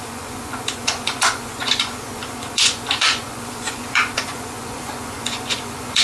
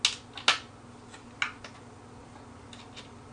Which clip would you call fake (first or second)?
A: first